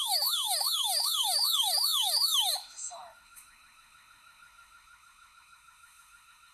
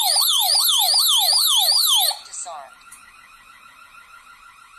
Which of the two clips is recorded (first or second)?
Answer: second